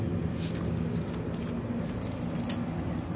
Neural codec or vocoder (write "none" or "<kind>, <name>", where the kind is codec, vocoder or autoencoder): none